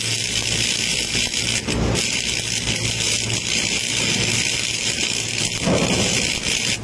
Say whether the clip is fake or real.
real